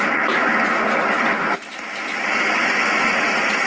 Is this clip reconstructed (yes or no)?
no